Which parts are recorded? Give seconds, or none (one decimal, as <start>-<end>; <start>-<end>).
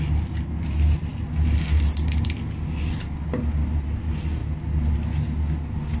0.0-6.0